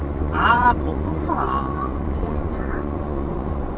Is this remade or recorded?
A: remade